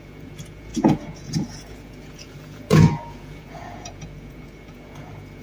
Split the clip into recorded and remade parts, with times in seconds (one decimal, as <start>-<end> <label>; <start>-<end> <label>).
0.0-5.4 remade